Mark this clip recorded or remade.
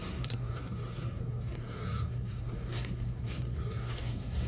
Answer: remade